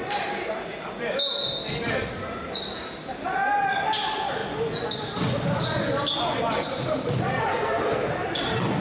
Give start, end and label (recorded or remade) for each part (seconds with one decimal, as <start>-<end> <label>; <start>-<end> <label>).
0.0-7.5 recorded; 7.5-8.1 remade; 8.1-8.8 recorded